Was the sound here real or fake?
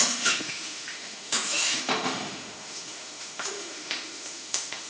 fake